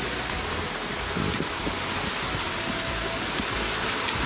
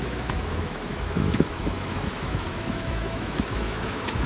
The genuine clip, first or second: first